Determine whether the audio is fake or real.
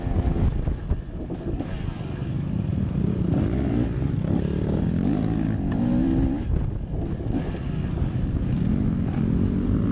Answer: real